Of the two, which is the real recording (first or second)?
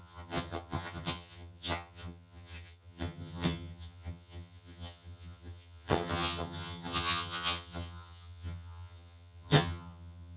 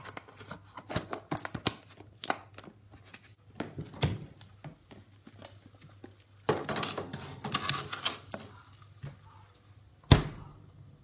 second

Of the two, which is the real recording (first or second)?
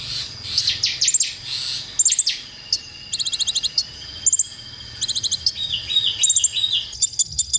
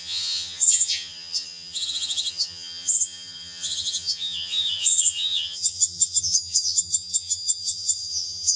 first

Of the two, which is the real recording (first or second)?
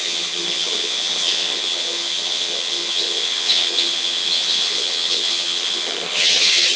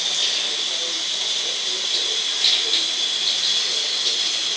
second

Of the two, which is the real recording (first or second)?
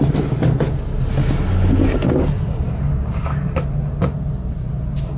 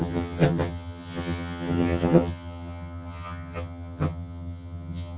first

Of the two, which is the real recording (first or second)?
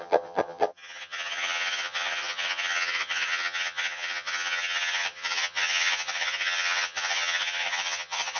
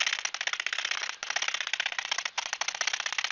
second